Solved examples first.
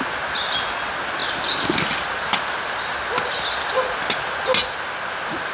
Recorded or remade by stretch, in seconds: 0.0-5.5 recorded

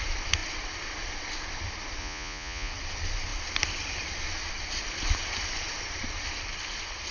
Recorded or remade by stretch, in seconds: 0.0-2.0 recorded; 2.0-2.7 remade; 2.7-7.1 recorded

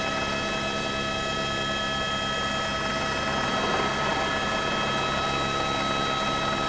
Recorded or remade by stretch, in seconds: 0.0-6.7 recorded

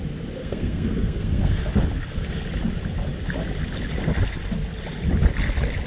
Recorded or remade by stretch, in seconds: 0.0-0.4 recorded; 0.4-1.7 remade; 1.7-5.9 recorded

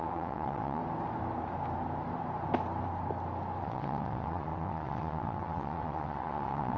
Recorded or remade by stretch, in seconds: 0.0-0.8 remade; 0.8-3.6 recorded; 3.6-6.8 remade

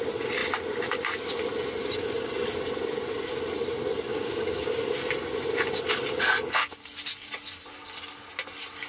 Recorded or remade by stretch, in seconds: 0.0-4.1 recorded; 4.1-4.8 remade; 4.8-8.9 recorded

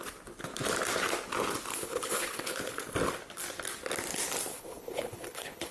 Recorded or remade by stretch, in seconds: 0.0-1.7 recorded; 1.7-2.8 remade; 2.8-4.5 recorded; 4.5-5.7 remade